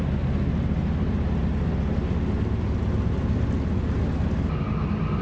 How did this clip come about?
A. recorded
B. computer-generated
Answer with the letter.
A